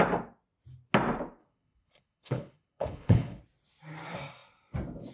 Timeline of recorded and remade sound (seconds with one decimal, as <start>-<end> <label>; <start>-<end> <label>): 0.0-1.4 recorded; 1.4-3.4 remade; 3.4-5.1 recorded